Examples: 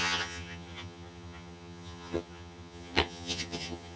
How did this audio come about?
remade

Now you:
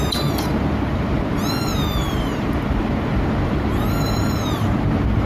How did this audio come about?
remade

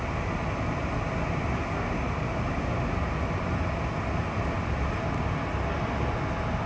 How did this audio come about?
recorded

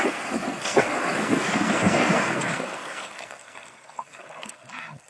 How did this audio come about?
remade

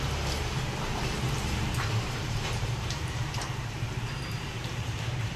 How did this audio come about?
remade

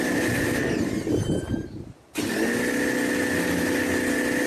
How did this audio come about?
recorded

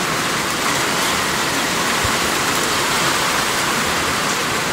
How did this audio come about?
remade